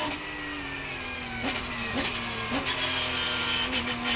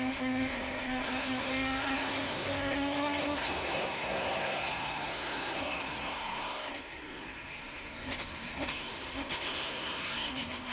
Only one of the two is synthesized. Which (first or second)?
second